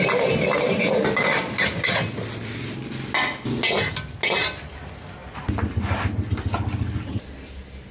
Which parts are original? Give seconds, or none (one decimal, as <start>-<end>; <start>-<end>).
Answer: 0.0-7.9